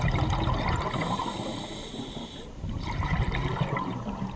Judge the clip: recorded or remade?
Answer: remade